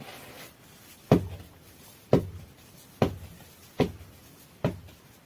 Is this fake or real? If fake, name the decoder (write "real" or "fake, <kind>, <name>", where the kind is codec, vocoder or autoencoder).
real